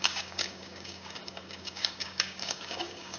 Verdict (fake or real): fake